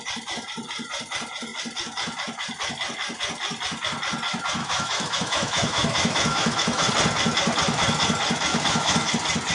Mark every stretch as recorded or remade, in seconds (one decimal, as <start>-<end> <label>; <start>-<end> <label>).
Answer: 0.0-4.6 recorded; 4.6-6.9 remade; 6.9-8.5 recorded; 8.5-9.1 remade; 9.1-9.5 recorded